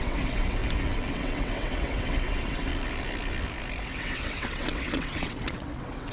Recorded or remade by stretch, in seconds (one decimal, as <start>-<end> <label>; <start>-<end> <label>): 0.0-0.6 remade; 0.6-1.1 recorded; 1.1-2.7 remade; 2.7-3.8 recorded; 3.8-6.1 remade